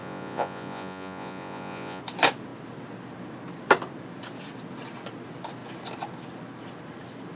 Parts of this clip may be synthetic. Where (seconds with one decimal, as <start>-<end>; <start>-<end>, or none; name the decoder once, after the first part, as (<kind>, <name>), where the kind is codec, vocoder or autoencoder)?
0.0-2.0 (vocoder, Vocos)